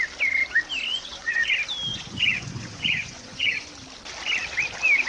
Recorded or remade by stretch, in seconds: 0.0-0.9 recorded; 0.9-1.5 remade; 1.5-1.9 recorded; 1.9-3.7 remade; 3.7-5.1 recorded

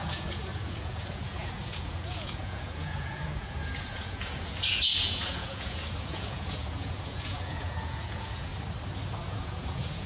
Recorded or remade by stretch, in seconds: 0.0-8.5 remade; 8.5-9.2 recorded; 9.2-10.1 remade